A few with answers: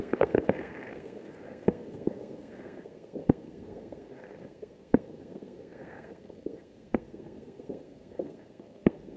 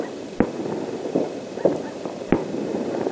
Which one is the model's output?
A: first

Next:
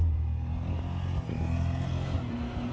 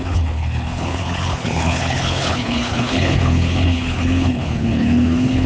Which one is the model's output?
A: second